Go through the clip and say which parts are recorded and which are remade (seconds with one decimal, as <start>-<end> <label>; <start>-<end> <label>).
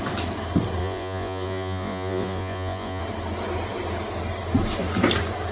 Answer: 0.0-0.8 recorded; 0.8-3.0 remade; 3.0-5.5 recorded